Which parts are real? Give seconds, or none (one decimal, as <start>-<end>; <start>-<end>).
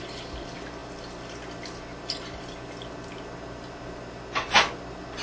0.0-5.2